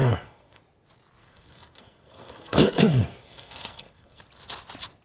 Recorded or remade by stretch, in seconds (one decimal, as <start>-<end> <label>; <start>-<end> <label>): 0.0-0.6 remade; 0.6-1.2 recorded; 1.2-4.2 remade; 4.2-5.0 recorded